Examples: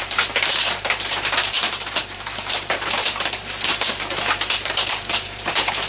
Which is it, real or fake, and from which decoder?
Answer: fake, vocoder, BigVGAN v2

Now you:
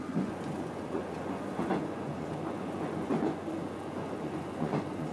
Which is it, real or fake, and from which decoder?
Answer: fake, vocoder, Vocos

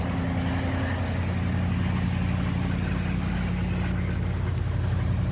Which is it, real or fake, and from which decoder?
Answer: real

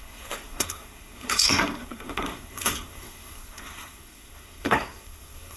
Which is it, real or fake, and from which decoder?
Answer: fake, codec, SNAC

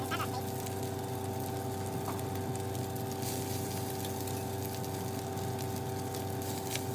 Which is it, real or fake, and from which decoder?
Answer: real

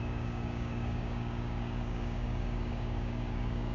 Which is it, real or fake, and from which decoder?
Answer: fake, codec, DAC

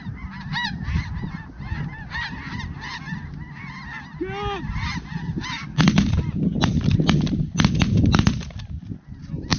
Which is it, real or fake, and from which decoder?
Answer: real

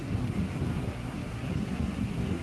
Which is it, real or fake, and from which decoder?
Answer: fake, codec, SNAC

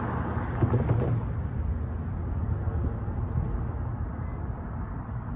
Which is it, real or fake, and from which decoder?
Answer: real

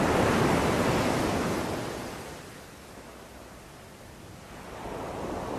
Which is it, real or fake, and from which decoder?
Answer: real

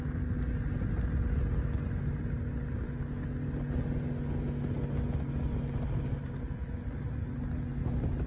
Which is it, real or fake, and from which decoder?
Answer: real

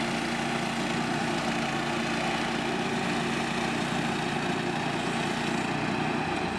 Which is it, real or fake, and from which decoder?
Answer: real